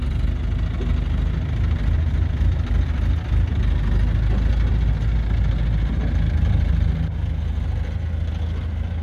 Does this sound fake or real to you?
real